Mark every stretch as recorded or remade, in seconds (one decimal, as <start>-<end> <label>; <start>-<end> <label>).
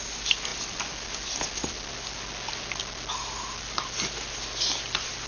0.0-5.3 recorded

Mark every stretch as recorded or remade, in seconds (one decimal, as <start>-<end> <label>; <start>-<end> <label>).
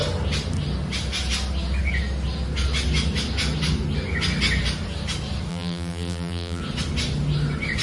0.0-5.5 recorded; 5.5-6.6 remade; 6.6-7.8 recorded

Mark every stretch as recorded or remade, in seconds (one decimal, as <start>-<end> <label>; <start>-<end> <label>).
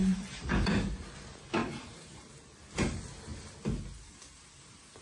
0.0-0.5 remade; 0.5-1.6 recorded; 1.6-2.3 remade; 2.3-5.0 recorded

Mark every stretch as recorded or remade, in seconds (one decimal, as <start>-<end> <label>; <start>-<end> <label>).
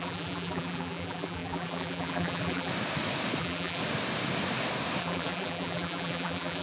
0.0-2.7 remade; 2.7-3.4 recorded; 3.4-3.8 remade; 3.8-5.0 recorded; 5.0-6.6 remade